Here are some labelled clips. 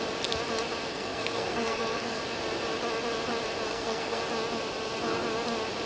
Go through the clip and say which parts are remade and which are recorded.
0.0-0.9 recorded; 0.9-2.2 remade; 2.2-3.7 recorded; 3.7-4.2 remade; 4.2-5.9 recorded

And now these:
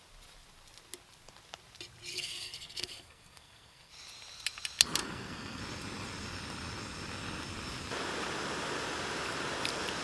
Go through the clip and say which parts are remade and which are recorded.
0.0-2.1 recorded; 2.1-3.9 remade; 3.9-5.0 recorded; 5.0-5.6 remade; 5.6-10.0 recorded

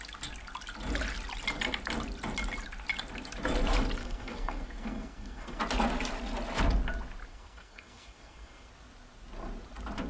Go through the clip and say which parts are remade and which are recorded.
0.0-4.0 recorded; 4.0-5.6 remade; 5.6-7.3 recorded; 7.3-8.7 remade; 8.7-10.1 recorded

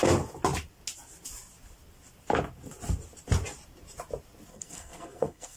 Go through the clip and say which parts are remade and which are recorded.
0.0-4.5 recorded; 4.5-5.6 remade

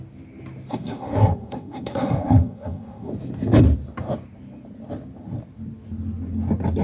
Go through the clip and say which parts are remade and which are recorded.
0.0-0.7 recorded; 0.7-3.1 remade; 3.1-6.8 recorded